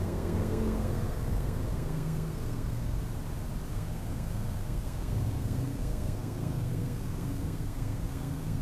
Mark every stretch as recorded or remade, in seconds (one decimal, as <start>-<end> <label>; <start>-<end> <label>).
0.0-3.0 remade; 3.0-3.7 recorded; 3.7-8.6 remade